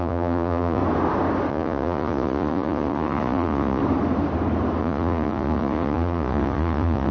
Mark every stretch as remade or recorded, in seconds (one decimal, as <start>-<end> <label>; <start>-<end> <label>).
0.0-0.8 remade; 0.8-1.5 recorded; 1.5-3.8 remade; 3.8-4.8 recorded; 4.8-7.1 remade

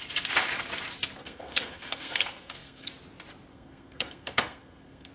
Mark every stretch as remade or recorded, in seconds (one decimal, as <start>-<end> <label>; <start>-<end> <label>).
0.0-1.2 recorded; 1.2-2.9 remade; 2.9-3.5 recorded; 3.5-5.1 remade